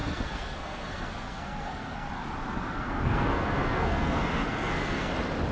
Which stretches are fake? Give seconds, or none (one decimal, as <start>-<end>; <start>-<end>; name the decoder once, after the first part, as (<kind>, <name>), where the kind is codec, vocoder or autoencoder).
0.0-2.1 (codec, SNAC); 2.5-5.1